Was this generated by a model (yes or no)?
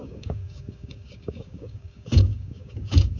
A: yes